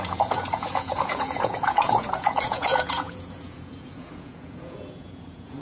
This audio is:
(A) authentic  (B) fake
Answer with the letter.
B